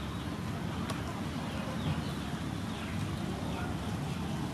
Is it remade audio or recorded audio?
recorded